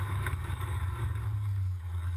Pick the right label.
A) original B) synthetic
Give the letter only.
B